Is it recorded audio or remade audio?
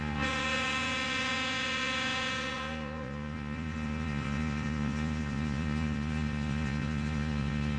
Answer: remade